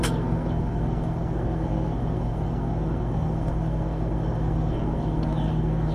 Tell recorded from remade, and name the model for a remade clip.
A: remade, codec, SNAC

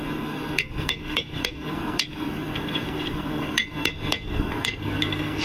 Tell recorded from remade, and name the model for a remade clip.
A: remade, codec, SNAC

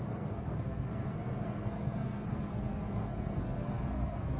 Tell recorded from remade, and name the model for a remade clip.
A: remade, codec, SNAC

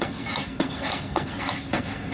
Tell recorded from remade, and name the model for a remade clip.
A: remade, codec, SNAC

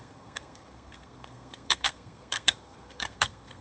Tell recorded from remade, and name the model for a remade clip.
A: remade, codec, SNAC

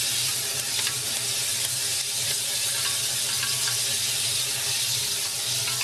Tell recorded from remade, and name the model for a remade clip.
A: recorded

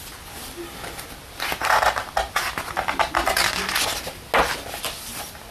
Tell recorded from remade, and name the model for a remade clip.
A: recorded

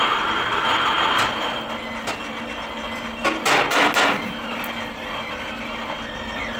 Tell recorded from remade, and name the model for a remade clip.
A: recorded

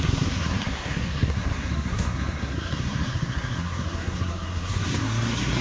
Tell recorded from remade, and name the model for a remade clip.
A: remade, codec, SNAC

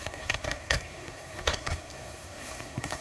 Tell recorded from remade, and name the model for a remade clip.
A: remade, codec, SNAC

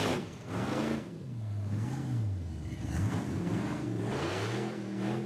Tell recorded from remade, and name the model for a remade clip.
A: remade, codec, SNAC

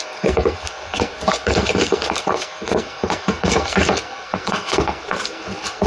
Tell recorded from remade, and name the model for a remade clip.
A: remade, codec, SNAC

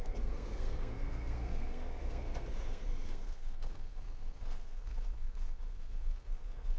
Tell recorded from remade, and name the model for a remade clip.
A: remade, codec, SNAC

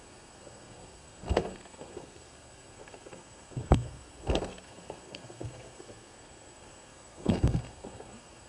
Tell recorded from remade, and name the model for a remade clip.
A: remade, codec, SNAC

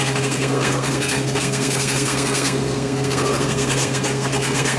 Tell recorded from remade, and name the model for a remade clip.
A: remade, codec, SNAC